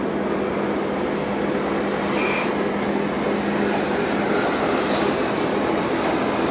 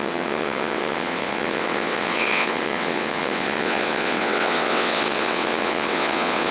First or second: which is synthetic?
second